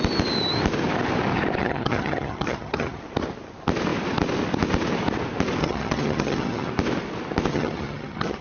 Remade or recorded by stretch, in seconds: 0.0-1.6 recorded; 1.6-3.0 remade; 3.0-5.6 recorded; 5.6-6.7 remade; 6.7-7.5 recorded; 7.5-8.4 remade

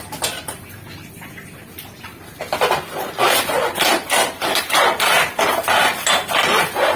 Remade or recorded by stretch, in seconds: 0.0-7.0 recorded

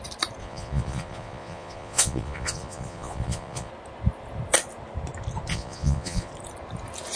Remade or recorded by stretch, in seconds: 0.0-0.4 recorded; 0.4-3.7 remade; 3.7-5.5 recorded; 5.5-6.3 remade; 6.3-7.2 recorded

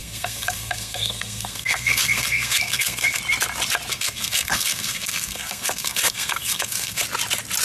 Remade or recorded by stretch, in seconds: 0.0-3.2 remade; 3.2-3.9 recorded; 3.9-7.0 remade; 7.0-7.6 recorded

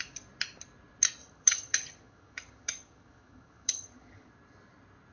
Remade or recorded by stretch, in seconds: 0.0-1.2 recorded; 1.2-4.3 remade; 4.3-5.1 recorded

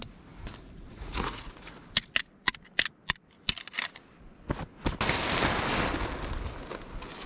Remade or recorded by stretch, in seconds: 0.0-0.9 recorded; 0.9-1.8 remade; 1.8-7.3 recorded

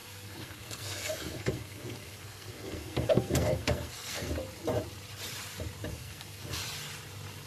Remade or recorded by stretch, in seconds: 0.0-4.3 remade; 4.3-5.9 recorded; 5.9-6.6 remade; 6.6-7.5 recorded